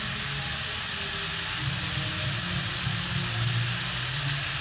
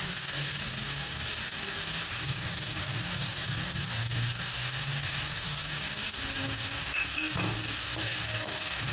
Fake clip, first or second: second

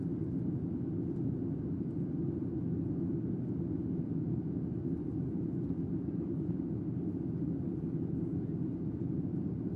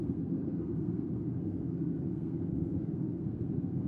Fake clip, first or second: second